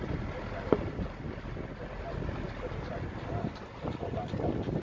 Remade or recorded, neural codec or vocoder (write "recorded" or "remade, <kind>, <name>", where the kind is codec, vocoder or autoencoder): recorded